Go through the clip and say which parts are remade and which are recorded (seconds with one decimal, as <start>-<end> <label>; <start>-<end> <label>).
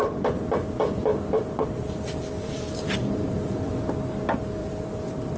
0.0-1.1 recorded; 1.1-3.7 remade; 3.7-4.6 recorded; 4.6-5.4 remade